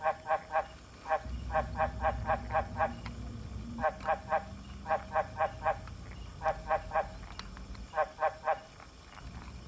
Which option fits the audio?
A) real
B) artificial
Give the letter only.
A